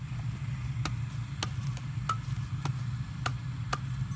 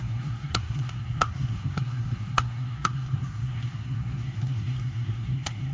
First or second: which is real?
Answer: first